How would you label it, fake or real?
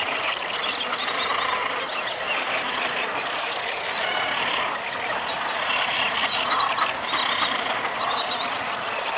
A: real